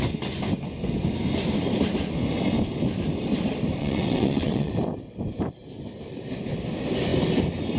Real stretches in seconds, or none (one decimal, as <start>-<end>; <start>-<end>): 0.0-3.8; 4.7-7.8